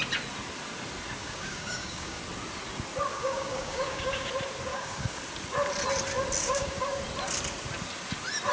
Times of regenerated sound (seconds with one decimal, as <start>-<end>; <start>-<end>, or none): 1.2-2.2; 3.1-4.3; 4.7-5.2; 6.4-7.0